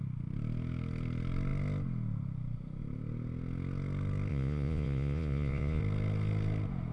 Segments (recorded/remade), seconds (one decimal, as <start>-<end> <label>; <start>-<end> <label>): 0.0-4.3 recorded; 4.3-5.8 remade; 5.8-6.9 recorded